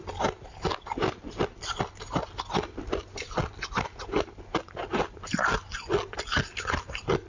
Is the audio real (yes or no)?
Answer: yes